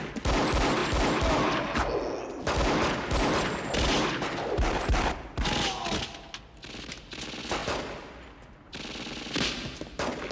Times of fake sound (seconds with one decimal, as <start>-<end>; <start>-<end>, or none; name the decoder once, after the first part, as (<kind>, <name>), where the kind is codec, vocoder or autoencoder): none

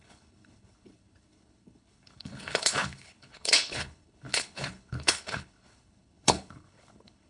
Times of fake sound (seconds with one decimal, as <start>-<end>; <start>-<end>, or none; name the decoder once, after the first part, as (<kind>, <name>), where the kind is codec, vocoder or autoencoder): 0.0-7.3 (codec, HILCodec)

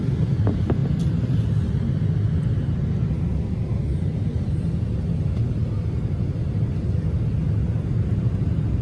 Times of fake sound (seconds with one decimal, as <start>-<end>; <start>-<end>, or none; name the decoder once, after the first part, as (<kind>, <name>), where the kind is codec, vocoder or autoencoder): none

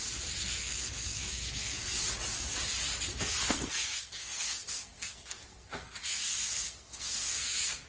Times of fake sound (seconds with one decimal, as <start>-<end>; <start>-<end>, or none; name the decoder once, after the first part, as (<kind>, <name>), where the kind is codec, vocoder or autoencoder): 0.4-2.0 (codec, SNAC); 3.1-7.9

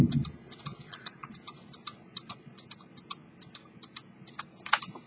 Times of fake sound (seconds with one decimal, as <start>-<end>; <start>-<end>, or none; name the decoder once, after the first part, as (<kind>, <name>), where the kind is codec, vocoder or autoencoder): 0.7-1.3 (vocoder, Vocos); 2.0-2.6